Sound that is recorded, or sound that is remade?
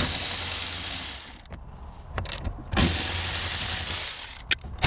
recorded